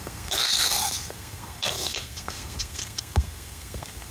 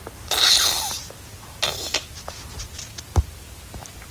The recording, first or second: second